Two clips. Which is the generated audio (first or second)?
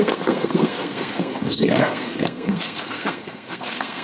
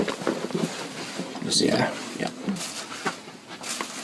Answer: first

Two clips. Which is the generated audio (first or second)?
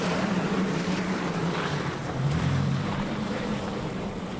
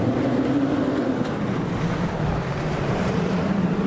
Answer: first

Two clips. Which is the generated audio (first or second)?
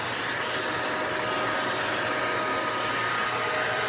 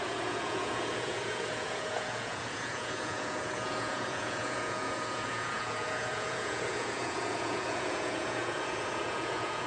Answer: second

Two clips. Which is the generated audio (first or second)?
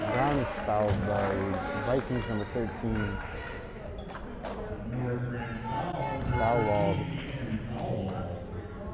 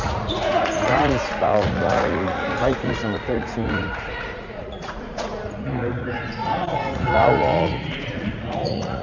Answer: second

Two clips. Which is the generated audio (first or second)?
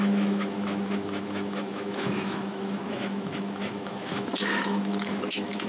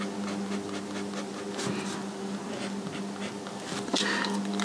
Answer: first